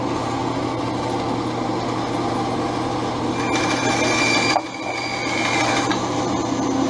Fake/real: real